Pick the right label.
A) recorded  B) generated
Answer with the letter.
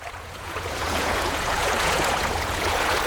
B